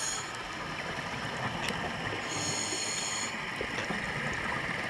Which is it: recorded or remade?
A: recorded